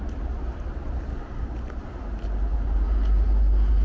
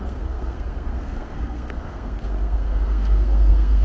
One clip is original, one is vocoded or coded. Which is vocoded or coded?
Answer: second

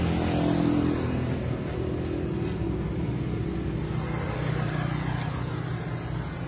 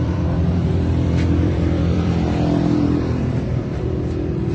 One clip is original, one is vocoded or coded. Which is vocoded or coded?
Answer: second